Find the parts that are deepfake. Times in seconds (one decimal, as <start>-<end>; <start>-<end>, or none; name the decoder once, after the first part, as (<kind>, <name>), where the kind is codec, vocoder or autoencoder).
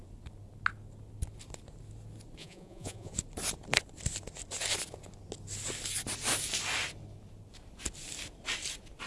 2.4-3.1 (vocoder, Vocos)